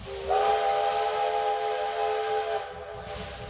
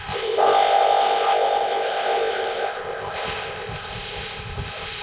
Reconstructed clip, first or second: second